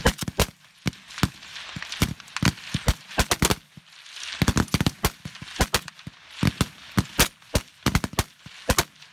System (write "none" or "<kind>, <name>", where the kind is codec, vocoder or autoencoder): none